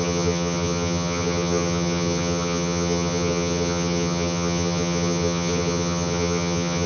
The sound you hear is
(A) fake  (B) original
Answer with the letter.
A